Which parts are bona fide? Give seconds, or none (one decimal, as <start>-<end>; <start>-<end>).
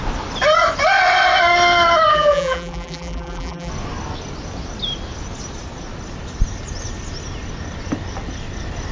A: 0.0-2.1; 3.7-8.9